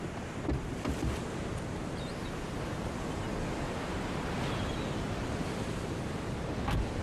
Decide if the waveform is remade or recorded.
recorded